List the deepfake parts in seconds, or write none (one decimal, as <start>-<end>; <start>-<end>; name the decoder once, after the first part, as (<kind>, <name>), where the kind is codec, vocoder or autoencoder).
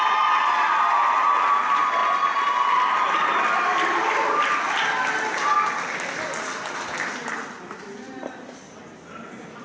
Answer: none